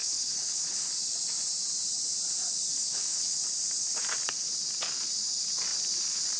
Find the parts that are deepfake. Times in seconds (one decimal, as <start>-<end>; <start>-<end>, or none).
0.0-0.9; 2.7-3.4